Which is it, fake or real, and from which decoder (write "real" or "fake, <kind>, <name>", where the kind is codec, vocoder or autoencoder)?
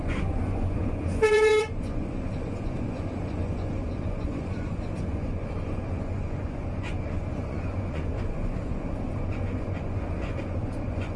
fake, vocoder, Vocos